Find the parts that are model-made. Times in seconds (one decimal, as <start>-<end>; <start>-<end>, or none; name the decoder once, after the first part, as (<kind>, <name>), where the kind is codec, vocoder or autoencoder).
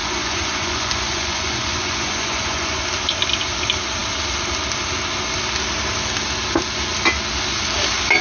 0.0-2.8 (vocoder, Vocos)